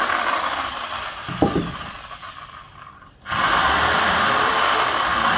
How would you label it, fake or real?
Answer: fake